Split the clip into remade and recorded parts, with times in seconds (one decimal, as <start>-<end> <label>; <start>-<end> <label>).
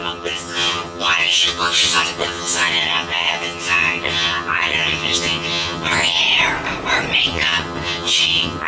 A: 0.0-6.2 remade; 6.2-7.3 recorded; 7.3-8.7 remade